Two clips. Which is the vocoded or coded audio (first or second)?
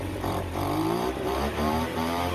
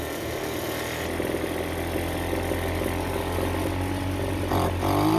first